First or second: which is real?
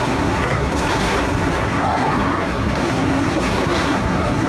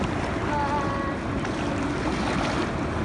second